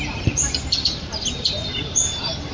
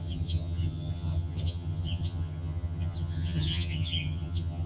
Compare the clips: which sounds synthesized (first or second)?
second